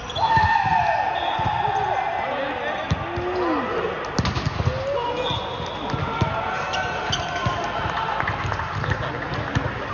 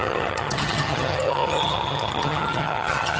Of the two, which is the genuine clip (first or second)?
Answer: first